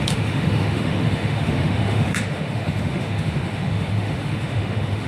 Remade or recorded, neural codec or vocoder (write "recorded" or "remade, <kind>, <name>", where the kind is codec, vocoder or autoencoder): remade, autoencoder, DAC-VAE